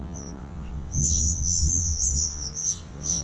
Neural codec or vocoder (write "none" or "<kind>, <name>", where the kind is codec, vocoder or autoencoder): vocoder, WaveNeXt